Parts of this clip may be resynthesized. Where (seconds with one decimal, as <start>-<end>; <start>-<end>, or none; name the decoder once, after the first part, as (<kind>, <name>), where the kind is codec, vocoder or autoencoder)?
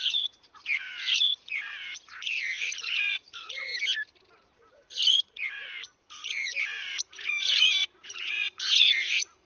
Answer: 0.0-3.7 (vocoder, Vocos); 4.7-9.5